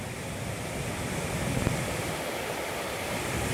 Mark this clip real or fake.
real